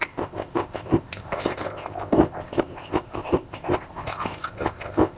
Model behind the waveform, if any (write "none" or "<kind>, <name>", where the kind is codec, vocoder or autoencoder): codec, ZipCodec